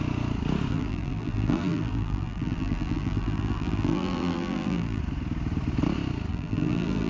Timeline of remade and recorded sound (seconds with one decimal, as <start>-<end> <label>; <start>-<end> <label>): 0.0-0.7 recorded; 0.7-5.0 remade; 5.0-6.3 recorded; 6.3-7.1 remade